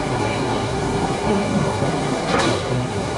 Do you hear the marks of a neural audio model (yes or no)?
yes